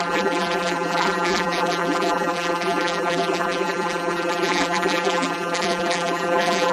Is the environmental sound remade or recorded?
remade